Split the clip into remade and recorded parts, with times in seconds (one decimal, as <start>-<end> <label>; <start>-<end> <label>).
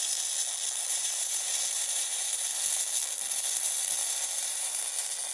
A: 0.0-0.9 recorded; 0.9-2.4 remade; 2.4-4.0 recorded; 4.0-4.8 remade; 4.8-5.3 recorded